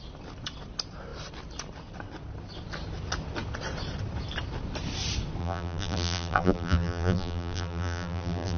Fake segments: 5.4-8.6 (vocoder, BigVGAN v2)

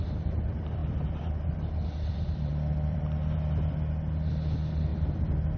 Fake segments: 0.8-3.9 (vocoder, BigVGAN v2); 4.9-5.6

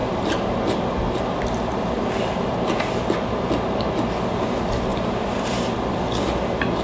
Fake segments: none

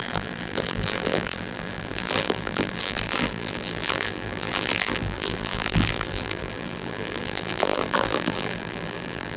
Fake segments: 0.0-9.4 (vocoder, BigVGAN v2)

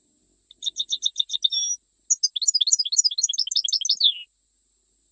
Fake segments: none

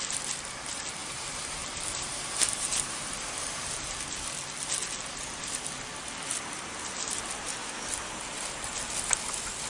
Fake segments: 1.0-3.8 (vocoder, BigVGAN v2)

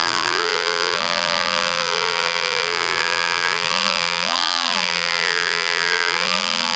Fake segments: 0.0-6.8 (vocoder, BigVGAN v2)